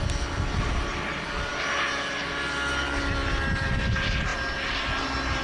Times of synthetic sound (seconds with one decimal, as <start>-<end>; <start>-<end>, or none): none